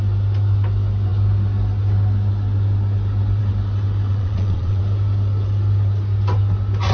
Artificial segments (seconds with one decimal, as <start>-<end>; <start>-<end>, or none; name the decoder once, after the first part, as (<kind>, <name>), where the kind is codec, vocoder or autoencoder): 4.1-4.8 (vocoder, WaveNeXt)